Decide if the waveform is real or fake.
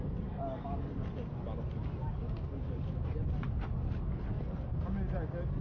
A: real